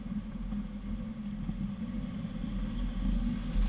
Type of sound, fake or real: real